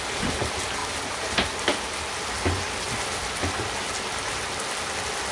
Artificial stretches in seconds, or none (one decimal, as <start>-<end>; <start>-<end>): none